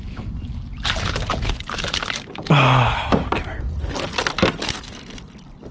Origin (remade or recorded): recorded